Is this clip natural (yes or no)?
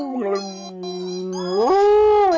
yes